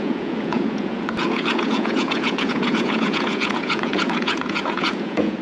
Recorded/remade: remade